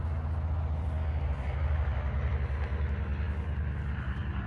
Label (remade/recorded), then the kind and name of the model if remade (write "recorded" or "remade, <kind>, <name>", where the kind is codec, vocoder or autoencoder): recorded